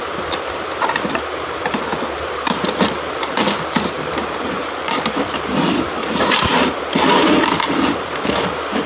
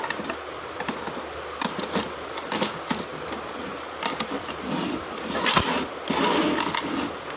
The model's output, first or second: first